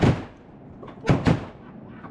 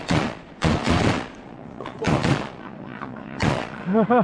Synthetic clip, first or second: second